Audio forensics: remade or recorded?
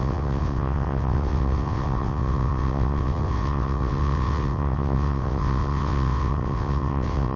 remade